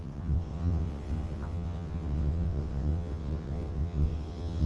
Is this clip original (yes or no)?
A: no